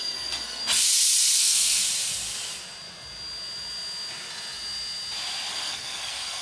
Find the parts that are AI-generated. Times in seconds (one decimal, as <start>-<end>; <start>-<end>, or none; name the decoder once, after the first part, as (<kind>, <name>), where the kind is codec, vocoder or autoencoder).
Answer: 0.0-0.6 (codec, SNAC); 1.4-1.8; 5.5-6.4